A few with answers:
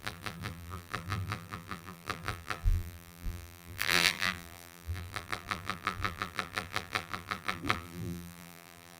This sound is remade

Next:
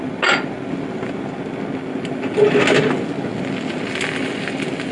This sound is recorded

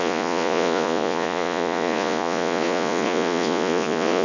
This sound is remade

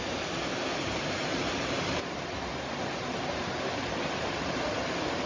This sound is remade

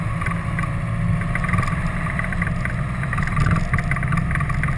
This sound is recorded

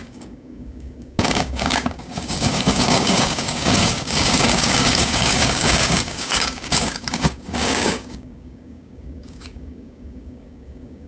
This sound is remade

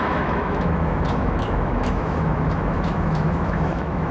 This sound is remade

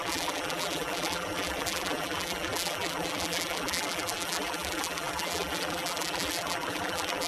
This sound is remade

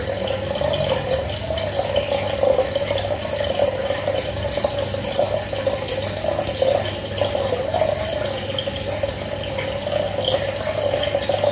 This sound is recorded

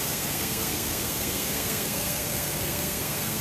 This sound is remade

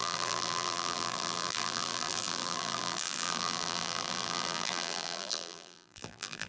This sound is remade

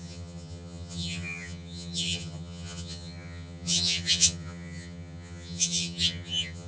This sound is remade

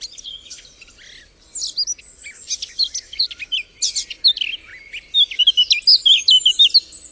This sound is recorded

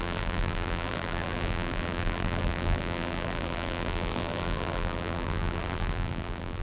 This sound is remade